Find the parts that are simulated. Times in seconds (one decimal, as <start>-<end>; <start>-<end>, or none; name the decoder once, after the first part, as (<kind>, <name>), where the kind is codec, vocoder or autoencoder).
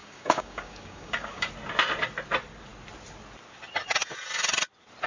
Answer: 0.0-1.5 (codec, DAC)